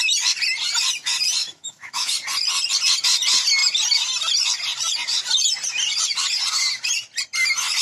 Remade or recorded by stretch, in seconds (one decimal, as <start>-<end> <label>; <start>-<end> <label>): 0.0-1.4 recorded; 1.4-2.1 remade; 2.1-7.8 recorded